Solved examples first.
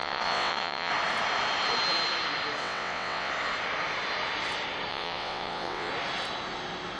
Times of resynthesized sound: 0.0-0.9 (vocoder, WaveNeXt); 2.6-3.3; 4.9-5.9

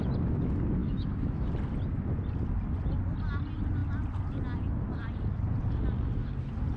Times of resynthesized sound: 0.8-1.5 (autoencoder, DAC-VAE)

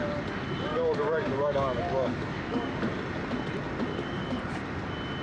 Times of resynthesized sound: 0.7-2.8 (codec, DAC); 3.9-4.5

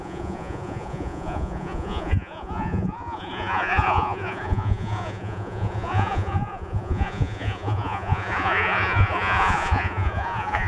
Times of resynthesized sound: 0.0-10.7 (vocoder, Vocos)

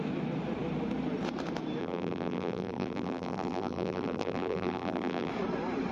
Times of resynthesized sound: 1.8-5.3 (vocoder, BigVGAN v2)